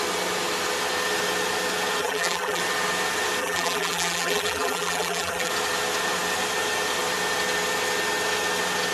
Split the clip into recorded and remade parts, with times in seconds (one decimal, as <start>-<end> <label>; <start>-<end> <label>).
0.0-2.0 recorded; 2.0-2.6 remade; 2.6-3.4 recorded; 3.4-5.5 remade; 5.5-8.9 recorded